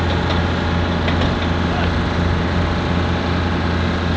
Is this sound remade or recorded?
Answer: recorded